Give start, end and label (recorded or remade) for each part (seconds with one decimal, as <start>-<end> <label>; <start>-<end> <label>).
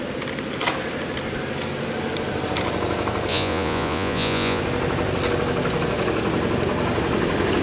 0.0-3.3 recorded; 3.3-4.6 remade; 4.6-7.6 recorded